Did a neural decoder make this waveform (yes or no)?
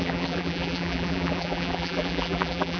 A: yes